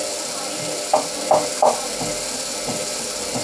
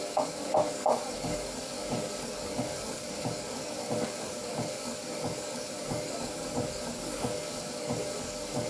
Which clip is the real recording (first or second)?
first